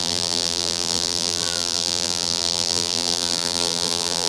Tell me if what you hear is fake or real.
fake